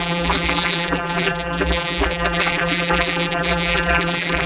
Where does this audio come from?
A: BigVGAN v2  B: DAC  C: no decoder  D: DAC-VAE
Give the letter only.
A